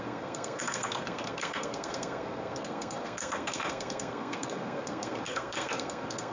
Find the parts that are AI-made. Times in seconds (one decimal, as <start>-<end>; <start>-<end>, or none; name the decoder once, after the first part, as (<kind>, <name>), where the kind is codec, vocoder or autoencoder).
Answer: 0.0-6.3 (codec, SNAC)